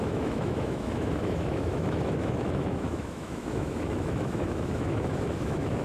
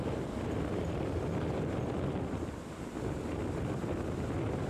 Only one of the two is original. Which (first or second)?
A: second